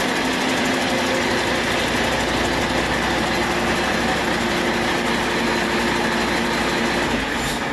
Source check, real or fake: real